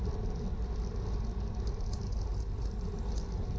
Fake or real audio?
real